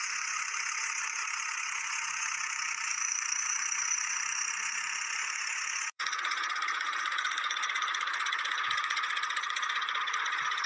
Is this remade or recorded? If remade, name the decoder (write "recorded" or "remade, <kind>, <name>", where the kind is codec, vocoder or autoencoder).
remade, vocoder, Vocos